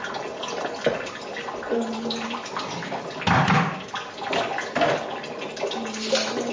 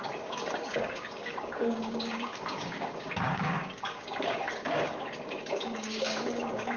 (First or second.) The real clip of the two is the first